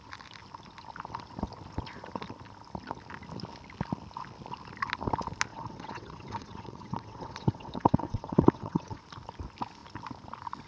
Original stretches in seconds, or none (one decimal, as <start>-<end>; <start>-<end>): 0.0-5.5; 9.0-10.7